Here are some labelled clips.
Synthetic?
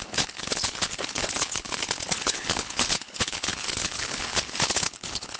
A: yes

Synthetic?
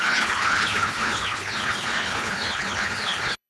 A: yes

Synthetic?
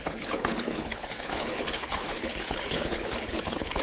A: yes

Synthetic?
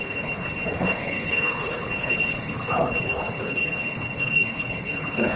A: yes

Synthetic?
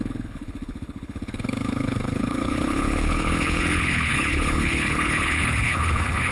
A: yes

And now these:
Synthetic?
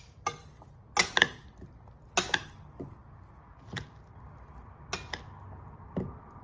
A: no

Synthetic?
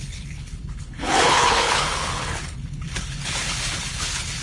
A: yes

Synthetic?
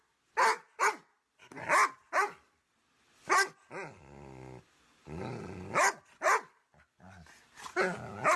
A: no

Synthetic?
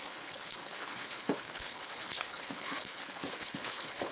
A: yes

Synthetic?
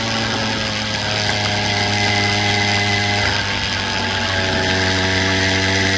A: no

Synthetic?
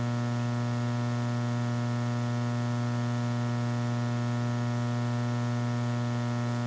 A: no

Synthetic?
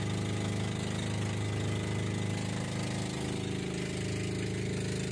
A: no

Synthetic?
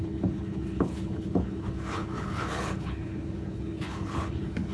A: yes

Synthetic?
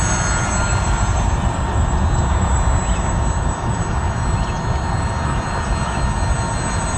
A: no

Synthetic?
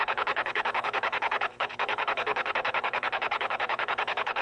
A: yes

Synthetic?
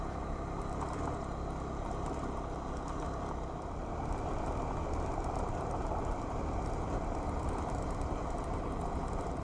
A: no